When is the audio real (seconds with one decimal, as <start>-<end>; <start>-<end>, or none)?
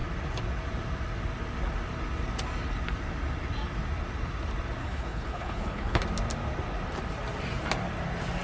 0.0-4.8; 6.0-8.4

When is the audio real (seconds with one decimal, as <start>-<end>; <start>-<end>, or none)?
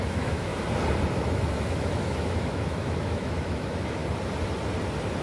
0.5-1.1; 4.0-5.2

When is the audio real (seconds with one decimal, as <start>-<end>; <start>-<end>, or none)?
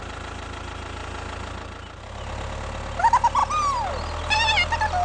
0.0-5.0